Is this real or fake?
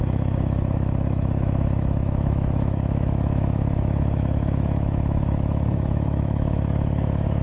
fake